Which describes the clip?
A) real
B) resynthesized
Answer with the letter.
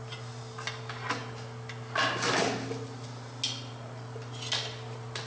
A